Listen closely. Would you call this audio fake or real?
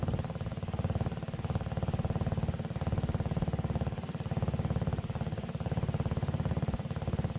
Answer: real